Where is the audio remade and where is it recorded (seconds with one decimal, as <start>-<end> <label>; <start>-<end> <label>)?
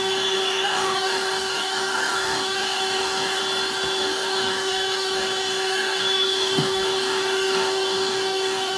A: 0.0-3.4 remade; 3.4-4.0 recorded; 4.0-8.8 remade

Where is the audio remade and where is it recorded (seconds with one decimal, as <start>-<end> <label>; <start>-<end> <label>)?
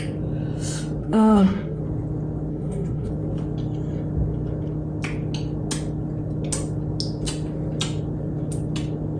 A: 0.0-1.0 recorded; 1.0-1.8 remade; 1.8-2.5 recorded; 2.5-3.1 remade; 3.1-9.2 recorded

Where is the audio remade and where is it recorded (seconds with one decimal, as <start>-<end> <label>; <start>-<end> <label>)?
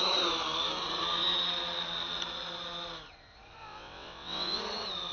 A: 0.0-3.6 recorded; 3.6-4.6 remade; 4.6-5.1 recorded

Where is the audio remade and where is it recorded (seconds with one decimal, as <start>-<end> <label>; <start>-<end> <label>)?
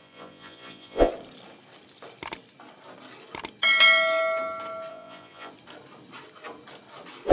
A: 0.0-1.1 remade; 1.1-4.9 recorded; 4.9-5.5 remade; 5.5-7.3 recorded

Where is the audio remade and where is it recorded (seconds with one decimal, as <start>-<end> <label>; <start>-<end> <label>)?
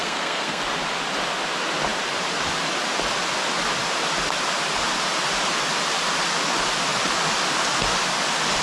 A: 0.0-0.6 remade; 0.6-8.6 recorded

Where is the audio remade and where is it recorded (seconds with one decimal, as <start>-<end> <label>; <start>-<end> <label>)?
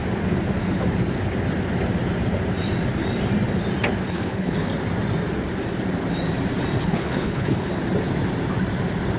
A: 0.0-4.1 recorded; 4.1-4.7 remade; 4.7-6.8 recorded; 6.8-7.7 remade; 7.7-9.2 recorded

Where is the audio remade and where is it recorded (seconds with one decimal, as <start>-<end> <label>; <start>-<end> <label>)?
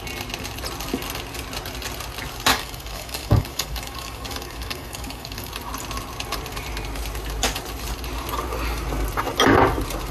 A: 0.0-2.5 recorded; 2.5-5.5 remade; 5.5-10.1 recorded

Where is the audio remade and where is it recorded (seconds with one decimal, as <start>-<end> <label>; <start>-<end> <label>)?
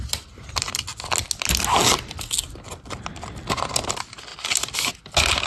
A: 0.0-5.5 recorded